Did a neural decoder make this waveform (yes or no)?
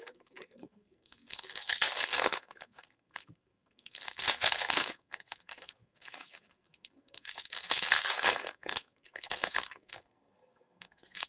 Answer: yes